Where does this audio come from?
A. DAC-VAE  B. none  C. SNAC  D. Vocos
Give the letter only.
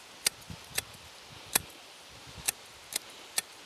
B